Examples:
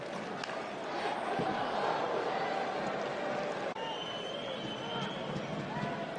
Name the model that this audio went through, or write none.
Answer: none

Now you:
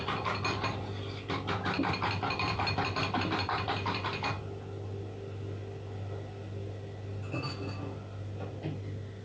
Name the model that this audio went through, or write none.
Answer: none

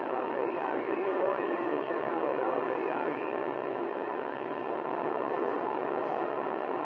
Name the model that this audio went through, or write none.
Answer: vocoder, WaveNeXt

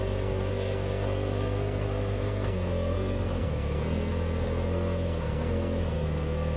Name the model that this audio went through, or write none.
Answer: codec, SNAC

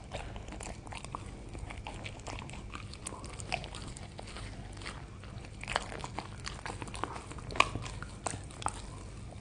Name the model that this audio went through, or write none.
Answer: none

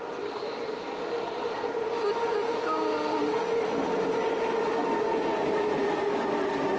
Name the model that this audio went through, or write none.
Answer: none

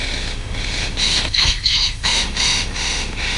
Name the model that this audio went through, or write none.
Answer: autoencoder, DAC-VAE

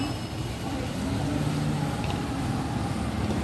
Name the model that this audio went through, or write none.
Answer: none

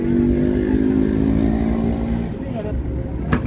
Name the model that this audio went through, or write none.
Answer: none